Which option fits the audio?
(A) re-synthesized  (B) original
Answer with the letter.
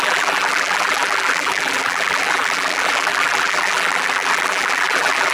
A